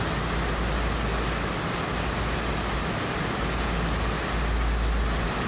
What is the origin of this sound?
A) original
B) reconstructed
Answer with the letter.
A